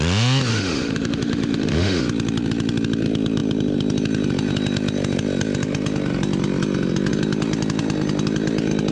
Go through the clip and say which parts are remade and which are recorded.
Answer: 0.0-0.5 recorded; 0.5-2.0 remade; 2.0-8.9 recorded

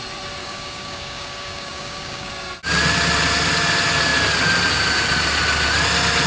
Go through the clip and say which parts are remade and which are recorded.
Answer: 0.0-0.4 recorded; 0.4-2.3 remade; 2.3-6.3 recorded

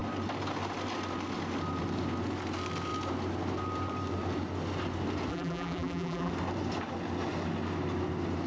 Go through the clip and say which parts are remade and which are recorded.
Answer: 0.0-5.3 recorded; 5.3-6.3 remade; 6.3-8.5 recorded